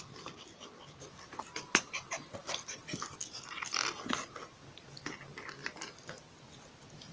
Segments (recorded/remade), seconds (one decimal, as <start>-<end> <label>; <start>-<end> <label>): 0.0-7.1 recorded